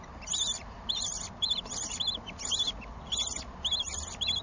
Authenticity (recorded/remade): recorded